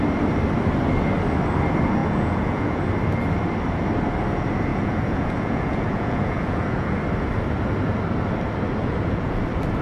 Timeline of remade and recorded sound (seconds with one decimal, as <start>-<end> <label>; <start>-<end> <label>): 0.0-2.0 recorded; 2.0-2.8 remade; 2.8-4.7 recorded; 4.7-7.0 remade; 7.0-8.8 recorded; 8.8-9.4 remade; 9.4-9.8 recorded

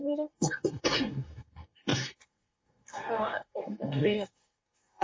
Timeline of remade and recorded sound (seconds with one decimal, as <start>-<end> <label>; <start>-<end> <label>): 0.0-5.0 remade

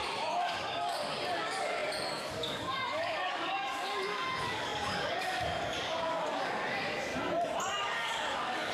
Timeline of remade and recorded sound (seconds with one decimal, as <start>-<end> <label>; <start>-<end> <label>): 0.0-7.1 remade; 7.1-7.8 recorded; 7.8-8.7 remade

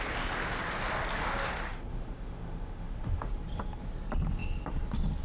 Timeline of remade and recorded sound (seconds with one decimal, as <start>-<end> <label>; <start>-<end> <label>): 0.0-1.9 recorded; 1.9-3.3 remade; 3.3-5.2 recorded

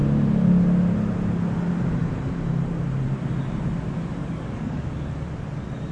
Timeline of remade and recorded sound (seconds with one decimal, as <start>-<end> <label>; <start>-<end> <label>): 0.0-4.2 recorded; 4.2-4.9 remade; 4.9-5.9 recorded

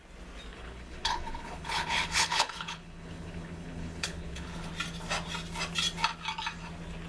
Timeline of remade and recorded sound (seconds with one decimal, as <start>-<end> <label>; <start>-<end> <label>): 0.0-0.5 recorded; 0.5-4.7 remade; 4.7-7.1 recorded